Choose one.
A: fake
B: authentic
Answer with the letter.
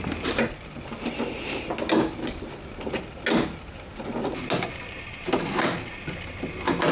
B